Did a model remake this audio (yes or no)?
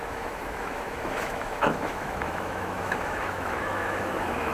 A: yes